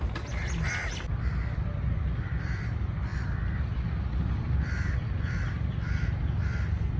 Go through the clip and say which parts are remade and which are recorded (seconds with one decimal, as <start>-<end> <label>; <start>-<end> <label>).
0.0-7.0 recorded